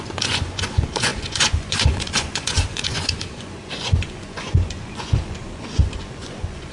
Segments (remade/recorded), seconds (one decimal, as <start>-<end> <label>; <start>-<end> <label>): 0.0-6.7 remade